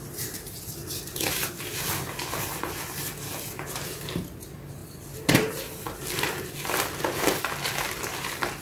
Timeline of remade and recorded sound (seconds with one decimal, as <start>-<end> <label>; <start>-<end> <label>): 0.0-0.8 recorded; 0.8-1.7 remade; 1.7-4.8 recorded; 4.8-7.1 remade; 7.1-8.6 recorded